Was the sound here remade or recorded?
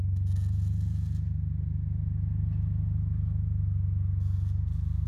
recorded